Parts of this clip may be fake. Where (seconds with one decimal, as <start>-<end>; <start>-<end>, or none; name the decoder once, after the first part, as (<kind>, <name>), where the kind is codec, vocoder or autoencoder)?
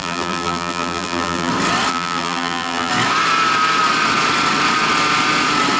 0.0-1.5 (vocoder, BigVGAN v2); 1.9-2.9